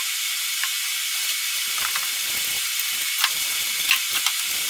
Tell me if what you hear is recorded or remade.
recorded